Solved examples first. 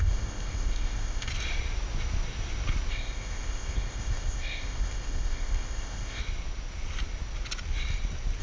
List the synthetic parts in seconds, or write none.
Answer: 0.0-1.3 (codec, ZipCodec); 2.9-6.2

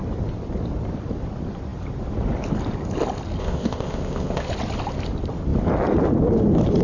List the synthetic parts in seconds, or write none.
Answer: 3.4-4.5 (codec, ZipCodec)

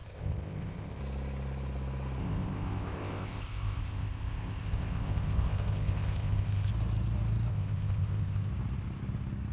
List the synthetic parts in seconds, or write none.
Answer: 0.0-1.0 (codec, ZipCodec); 2.2-6.7; 7.5-8.5

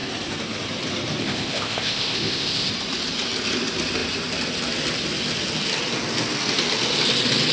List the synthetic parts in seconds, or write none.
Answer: 1.2-2.7 (codec, ZipCodec)

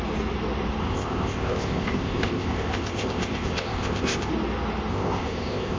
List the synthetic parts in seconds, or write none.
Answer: 0.8-4.3 (codec, ZipCodec); 4.9-5.8

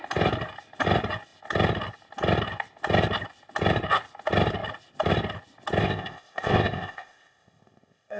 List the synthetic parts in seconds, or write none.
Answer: 5.8-8.2 (codec, ZipCodec)